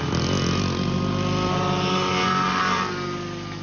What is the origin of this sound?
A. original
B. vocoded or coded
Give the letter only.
A